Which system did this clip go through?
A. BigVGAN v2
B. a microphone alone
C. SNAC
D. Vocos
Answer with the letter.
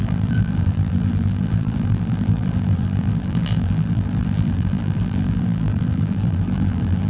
A